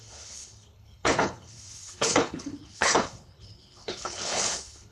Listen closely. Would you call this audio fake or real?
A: fake